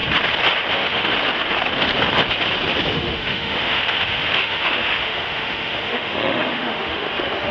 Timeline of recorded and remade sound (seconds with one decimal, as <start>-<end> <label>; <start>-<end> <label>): 0.0-0.7 recorded; 0.7-1.1 remade; 1.1-2.9 recorded; 2.9-7.5 remade